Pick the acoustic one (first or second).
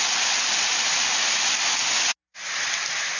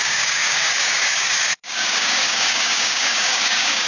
first